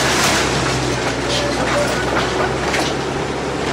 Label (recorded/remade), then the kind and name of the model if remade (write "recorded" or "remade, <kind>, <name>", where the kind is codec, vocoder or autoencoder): recorded